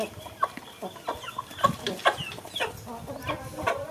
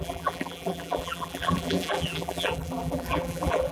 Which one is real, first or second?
first